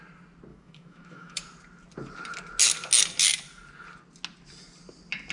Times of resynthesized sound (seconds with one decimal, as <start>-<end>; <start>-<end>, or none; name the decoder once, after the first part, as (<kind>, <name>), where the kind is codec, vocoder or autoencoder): 0.5-1.4 (autoencoder, DAC-VAE)